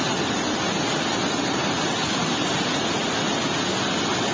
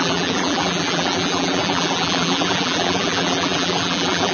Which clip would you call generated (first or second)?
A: second